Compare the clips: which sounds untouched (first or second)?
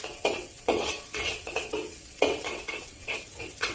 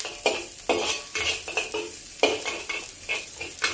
second